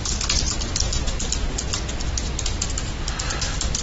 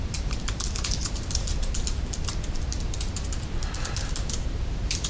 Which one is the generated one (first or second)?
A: second